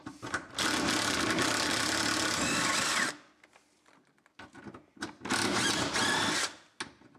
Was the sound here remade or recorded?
recorded